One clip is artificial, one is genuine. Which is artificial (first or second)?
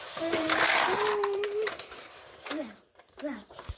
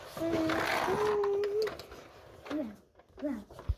first